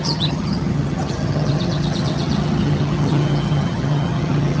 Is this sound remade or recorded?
remade